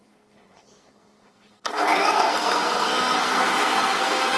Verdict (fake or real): fake